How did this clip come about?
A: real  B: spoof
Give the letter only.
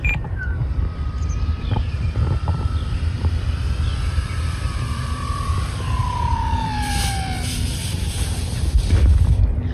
B